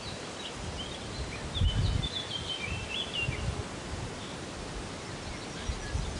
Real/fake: real